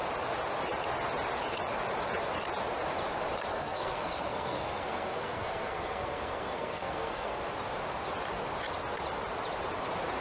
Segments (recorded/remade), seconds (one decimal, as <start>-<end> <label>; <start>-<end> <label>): 0.0-3.5 recorded; 3.5-7.4 remade; 7.4-10.2 recorded